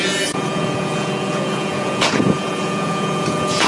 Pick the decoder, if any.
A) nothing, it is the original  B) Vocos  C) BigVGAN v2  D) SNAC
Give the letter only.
B